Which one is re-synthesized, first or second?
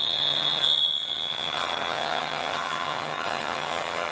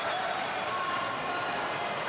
first